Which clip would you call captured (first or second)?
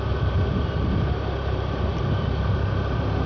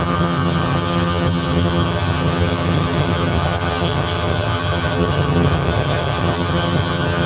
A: first